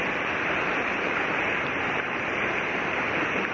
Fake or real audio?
fake